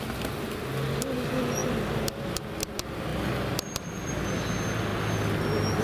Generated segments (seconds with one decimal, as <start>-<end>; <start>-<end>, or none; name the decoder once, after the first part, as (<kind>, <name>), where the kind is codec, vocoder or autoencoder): none

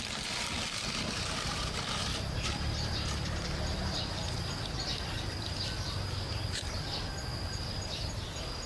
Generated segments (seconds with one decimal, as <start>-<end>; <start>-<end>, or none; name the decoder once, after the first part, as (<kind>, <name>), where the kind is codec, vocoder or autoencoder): 2.1-6.3 (vocoder, BigVGAN v2); 7.3-8.7

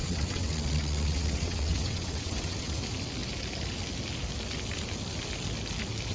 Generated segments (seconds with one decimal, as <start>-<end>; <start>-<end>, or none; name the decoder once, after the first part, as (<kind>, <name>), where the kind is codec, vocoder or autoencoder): 0.0-2.8 (vocoder, WaveNeXt)

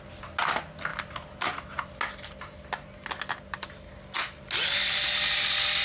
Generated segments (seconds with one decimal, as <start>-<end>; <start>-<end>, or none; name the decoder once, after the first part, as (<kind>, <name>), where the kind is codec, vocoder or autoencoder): none

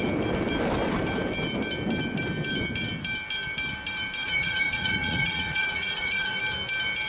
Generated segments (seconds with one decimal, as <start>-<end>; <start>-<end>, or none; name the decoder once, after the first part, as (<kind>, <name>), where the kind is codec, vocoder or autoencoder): 4.2-6.4 (vocoder, Vocos)

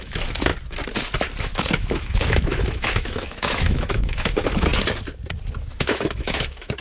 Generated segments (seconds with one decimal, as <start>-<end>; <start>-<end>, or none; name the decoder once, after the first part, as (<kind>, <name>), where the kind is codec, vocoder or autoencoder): 0.0-0.5 (autoencoder, DAC-VAE); 1.4-4.7; 5.8-6.8

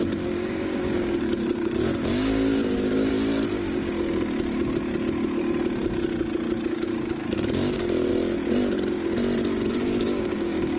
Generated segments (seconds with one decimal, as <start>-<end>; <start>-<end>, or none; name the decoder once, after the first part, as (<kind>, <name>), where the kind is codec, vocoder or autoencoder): 0.0-3.1 (codec, DAC); 6.7-8.1; 9.7-10.8